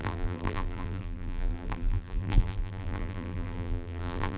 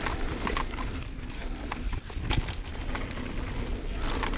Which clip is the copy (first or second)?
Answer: first